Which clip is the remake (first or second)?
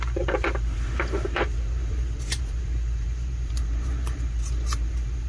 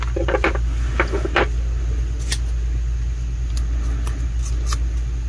first